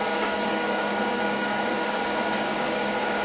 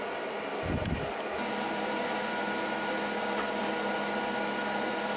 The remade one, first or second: first